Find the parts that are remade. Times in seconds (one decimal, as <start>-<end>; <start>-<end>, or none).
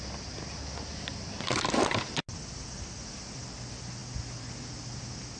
none